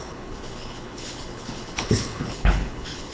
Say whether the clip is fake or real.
fake